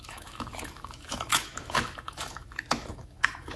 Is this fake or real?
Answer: fake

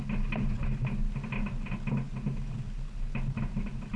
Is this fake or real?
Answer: real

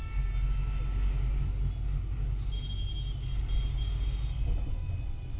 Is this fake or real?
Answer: real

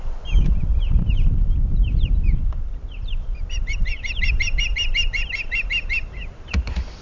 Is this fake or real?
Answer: fake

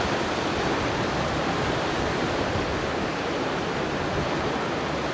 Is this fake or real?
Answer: fake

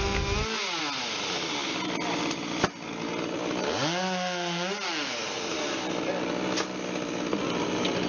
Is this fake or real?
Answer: real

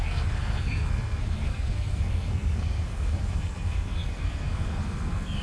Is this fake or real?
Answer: fake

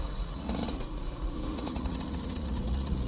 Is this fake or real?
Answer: fake